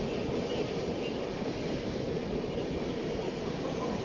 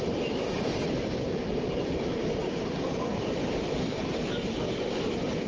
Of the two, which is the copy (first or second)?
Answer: second